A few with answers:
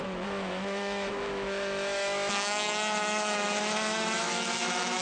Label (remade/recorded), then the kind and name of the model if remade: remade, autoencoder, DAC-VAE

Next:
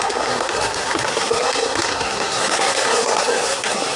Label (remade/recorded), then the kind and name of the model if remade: remade, codec, SNAC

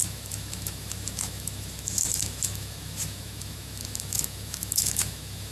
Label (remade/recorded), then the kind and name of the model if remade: remade, autoencoder, DAC-VAE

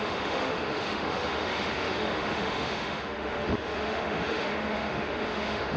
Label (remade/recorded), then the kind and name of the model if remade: remade, autoencoder, DAC-VAE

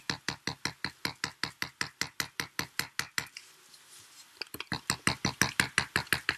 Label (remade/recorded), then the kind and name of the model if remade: recorded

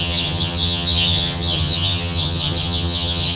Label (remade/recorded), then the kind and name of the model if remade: remade, vocoder, HiFi-GAN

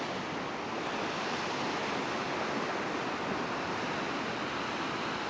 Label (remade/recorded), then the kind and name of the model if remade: recorded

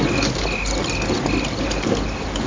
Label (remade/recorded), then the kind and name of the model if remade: recorded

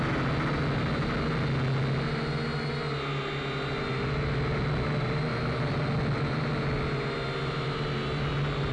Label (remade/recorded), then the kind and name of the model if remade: recorded